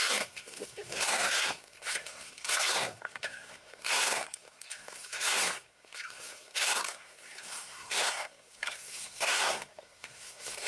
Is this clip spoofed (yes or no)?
yes